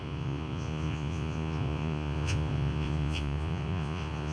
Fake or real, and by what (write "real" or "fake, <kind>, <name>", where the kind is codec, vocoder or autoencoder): fake, vocoder, Vocos